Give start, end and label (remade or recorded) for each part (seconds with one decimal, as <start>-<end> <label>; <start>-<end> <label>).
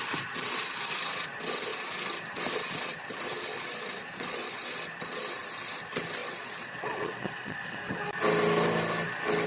0.0-3.5 recorded; 3.5-4.7 remade; 4.7-6.2 recorded; 6.2-7.8 remade; 7.8-9.5 recorded